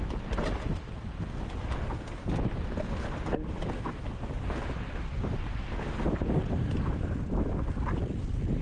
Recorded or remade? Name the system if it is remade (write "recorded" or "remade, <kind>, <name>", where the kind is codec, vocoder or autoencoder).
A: recorded